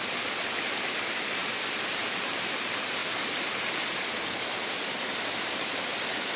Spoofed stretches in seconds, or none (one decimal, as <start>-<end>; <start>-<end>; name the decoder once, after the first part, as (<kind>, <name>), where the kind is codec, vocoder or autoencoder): 0.0-3.0 (vocoder, BigVGAN v2); 5.0-6.4